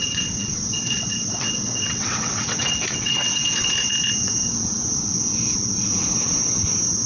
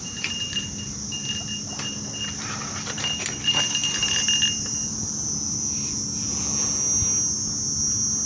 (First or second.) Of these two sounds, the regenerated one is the first